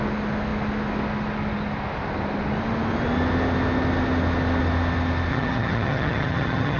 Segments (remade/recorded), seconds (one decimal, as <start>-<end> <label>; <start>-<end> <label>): 0.0-5.3 recorded; 5.3-6.8 remade

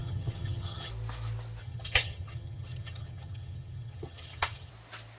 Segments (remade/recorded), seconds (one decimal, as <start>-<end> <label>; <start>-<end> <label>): 0.0-0.9 remade; 0.9-1.6 recorded; 1.6-4.7 remade; 4.7-5.2 recorded

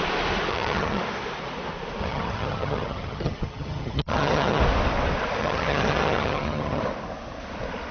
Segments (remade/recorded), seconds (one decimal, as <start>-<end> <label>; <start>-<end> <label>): 0.0-0.5 recorded; 0.5-1.0 remade; 1.0-2.0 recorded; 2.0-4.6 remade; 4.6-5.4 recorded; 5.4-6.8 remade; 6.8-7.9 recorded

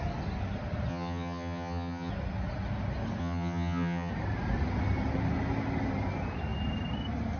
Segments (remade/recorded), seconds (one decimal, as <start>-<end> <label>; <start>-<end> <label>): 0.0-0.9 recorded; 0.9-2.1 remade; 2.1-3.2 recorded; 3.2-4.1 remade; 4.1-7.4 recorded

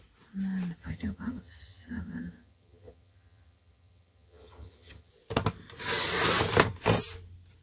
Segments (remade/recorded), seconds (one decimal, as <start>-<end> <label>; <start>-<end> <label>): 0.0-0.8 recorded; 0.8-5.1 remade; 5.1-7.6 recorded

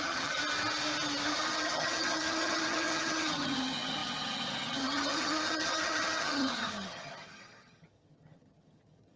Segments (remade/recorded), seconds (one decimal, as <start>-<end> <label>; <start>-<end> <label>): 0.0-0.4 remade; 0.4-1.4 recorded; 1.4-9.2 remade

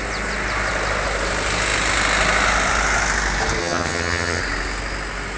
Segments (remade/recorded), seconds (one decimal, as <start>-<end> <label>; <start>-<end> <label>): 0.0-3.6 recorded; 3.6-4.4 remade; 4.4-5.4 recorded

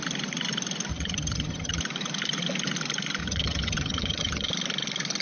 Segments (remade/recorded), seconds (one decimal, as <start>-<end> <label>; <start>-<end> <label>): 0.0-0.9 recorded; 0.9-1.8 remade; 1.8-3.2 recorded; 3.2-4.5 remade; 4.5-5.2 recorded